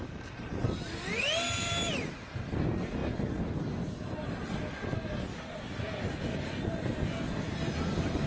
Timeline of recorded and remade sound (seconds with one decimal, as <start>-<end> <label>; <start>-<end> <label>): 0.0-8.3 recorded